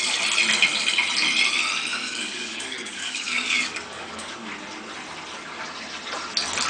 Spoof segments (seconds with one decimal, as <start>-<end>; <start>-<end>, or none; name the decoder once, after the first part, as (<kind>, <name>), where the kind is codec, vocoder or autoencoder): 1.9-4.5 (codec, DAC)